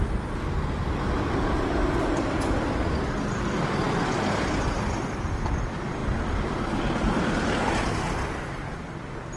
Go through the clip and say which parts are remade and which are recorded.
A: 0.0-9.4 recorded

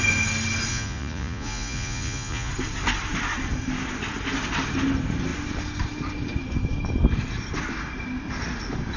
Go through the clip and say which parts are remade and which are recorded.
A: 0.0-0.7 recorded; 0.7-2.5 remade; 2.5-9.0 recorded

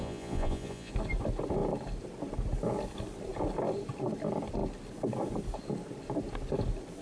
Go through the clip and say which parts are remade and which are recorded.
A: 0.0-0.9 remade; 0.9-7.0 recorded

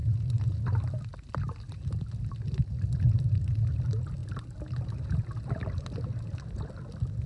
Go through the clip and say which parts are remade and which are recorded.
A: 0.0-7.3 recorded

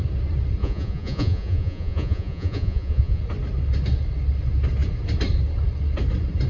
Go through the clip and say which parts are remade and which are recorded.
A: 0.0-0.6 recorded; 0.6-3.2 remade; 3.2-6.5 recorded

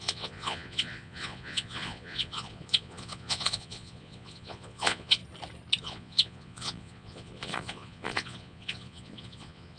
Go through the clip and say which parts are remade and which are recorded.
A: 0.0-5.2 remade; 5.2-5.8 recorded; 5.8-9.8 remade